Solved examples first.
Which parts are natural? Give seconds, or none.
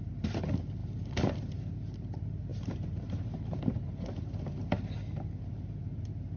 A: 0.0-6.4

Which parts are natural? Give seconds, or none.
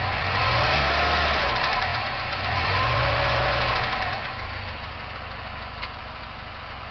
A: 0.8-1.4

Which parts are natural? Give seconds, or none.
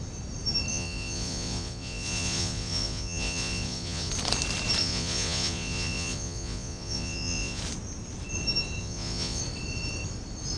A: 0.0-0.7; 4.1-4.8; 7.6-8.8; 9.4-10.6